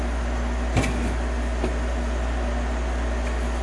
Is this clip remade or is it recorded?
recorded